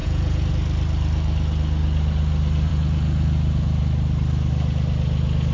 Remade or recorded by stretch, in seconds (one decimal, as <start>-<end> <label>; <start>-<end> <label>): 0.0-0.5 remade; 0.5-2.7 recorded; 2.7-3.8 remade; 3.8-5.5 recorded